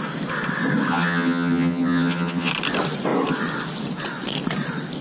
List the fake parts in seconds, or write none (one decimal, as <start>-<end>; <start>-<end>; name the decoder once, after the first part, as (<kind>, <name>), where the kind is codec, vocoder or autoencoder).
0.9-2.5 (vocoder, HiFi-GAN)

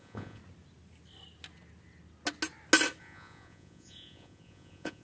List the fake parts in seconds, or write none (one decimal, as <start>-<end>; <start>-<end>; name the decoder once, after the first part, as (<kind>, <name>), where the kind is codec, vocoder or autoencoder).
0.0-0.4 (vocoder, Vocos); 3.0-5.0

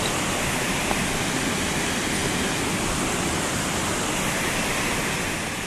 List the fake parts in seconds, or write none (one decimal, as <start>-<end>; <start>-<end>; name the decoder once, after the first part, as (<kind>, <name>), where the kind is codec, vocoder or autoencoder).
none

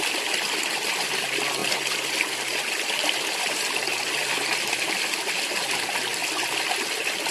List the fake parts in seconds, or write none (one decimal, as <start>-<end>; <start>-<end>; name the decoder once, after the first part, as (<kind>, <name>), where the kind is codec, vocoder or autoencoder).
none

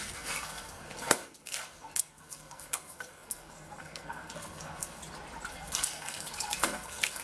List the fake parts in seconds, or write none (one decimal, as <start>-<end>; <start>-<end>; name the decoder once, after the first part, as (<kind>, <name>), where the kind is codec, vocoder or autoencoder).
0.0-5.0 (codec, SNAC); 5.5-7.2

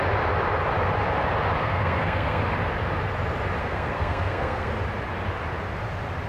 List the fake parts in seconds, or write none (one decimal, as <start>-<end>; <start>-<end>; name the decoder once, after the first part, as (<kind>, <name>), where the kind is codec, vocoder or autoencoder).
1.6-2.4 (codec, SNAC); 3.6-4.7

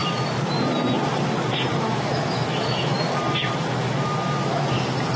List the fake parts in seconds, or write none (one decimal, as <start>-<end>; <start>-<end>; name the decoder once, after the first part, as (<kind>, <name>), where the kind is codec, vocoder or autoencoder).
1.7-4.8 (autoencoder, DAC-VAE)